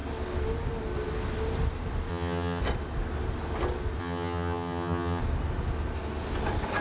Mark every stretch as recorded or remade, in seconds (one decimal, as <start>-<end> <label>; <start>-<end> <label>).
0.0-2.1 recorded; 2.1-2.6 remade; 2.6-4.0 recorded; 4.0-5.2 remade; 5.2-6.8 recorded

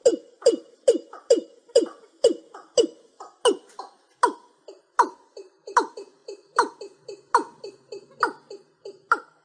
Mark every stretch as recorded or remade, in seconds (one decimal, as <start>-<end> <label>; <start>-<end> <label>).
0.0-9.4 recorded